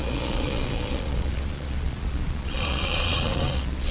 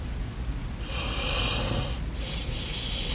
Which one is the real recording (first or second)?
second